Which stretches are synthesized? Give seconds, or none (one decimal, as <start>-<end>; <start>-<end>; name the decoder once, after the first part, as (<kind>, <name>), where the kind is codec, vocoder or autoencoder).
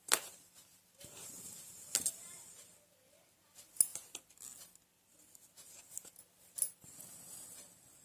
none